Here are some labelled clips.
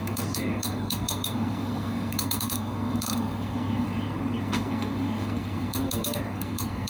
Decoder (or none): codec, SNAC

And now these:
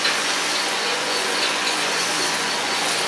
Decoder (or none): vocoder, Vocos